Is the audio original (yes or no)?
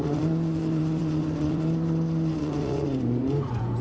no